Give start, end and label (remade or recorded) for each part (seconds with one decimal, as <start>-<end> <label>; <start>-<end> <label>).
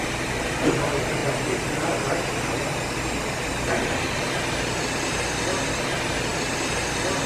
0.0-7.3 recorded